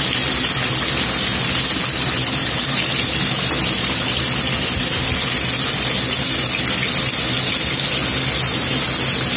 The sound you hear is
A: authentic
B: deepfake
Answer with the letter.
A